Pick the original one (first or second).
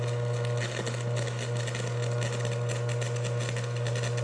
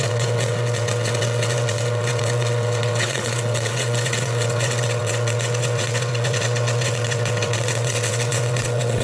first